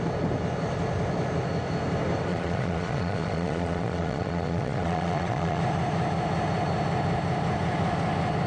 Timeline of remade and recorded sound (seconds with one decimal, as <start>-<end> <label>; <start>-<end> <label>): 0.0-2.3 recorded; 2.3-5.6 remade; 5.6-8.5 recorded